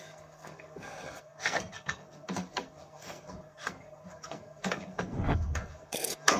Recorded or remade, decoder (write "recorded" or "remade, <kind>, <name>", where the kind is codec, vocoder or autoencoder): remade, codec, SNAC